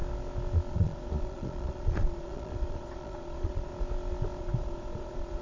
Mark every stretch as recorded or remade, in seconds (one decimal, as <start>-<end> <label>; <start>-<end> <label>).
0.0-0.7 recorded; 0.7-3.7 remade; 3.7-4.4 recorded; 4.4-5.4 remade